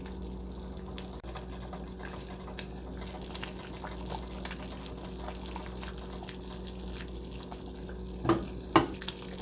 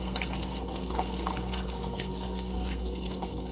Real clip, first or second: first